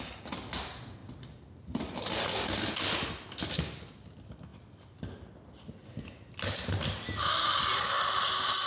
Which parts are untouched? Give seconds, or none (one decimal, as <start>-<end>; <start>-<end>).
0.0-8.7